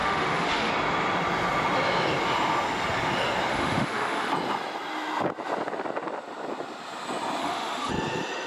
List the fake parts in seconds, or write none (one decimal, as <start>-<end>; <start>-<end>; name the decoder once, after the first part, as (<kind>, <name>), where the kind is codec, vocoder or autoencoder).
0.0-0.7 (autoencoder, DAC-VAE); 3.5-4.3; 7.4-7.9